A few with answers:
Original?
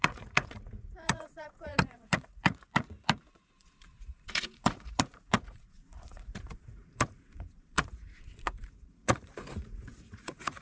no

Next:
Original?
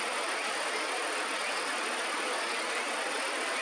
yes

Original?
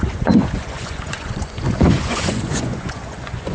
no